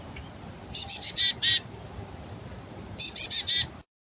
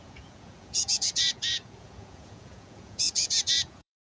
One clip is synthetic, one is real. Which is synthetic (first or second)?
second